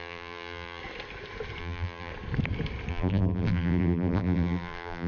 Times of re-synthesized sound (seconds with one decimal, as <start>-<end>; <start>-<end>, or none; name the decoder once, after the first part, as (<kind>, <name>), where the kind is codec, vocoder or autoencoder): 0.0-0.8 (vocoder, BigVGAN v2); 1.6-2.1; 2.9-5.1

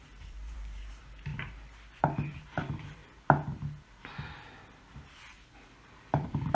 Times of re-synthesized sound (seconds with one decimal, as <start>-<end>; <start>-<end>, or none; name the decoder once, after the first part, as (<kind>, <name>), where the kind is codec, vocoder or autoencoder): 0.0-1.3 (vocoder, BigVGAN v2); 2.0-3.0; 5.3-6.5

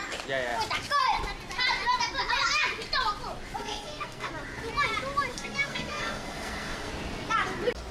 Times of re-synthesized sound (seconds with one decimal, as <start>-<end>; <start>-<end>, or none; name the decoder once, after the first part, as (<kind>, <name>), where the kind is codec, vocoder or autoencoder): 3.6-4.3 (codec, SNAC); 5.3-6.9

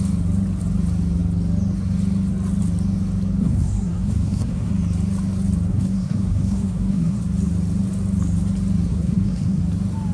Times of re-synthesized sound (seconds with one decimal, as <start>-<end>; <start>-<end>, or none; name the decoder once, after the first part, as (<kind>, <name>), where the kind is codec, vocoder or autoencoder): 3.4-4.7 (codec, SNAC); 5.7-7.2; 8.9-9.6